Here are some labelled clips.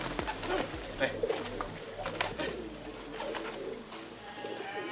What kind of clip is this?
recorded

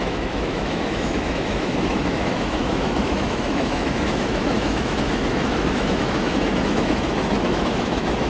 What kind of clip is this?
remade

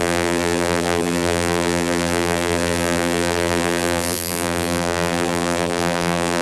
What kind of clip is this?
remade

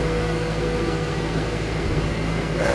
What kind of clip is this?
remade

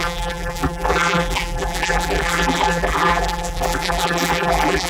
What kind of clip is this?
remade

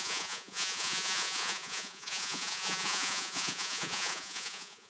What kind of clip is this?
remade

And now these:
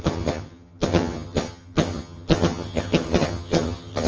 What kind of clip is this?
remade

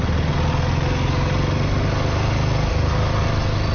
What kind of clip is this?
recorded